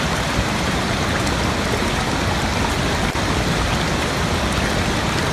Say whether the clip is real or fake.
real